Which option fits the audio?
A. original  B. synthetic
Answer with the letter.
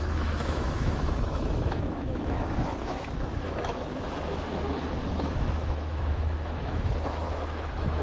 B